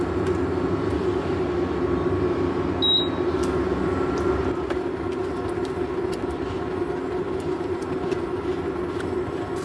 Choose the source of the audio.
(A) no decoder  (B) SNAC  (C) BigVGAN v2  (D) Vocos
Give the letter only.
A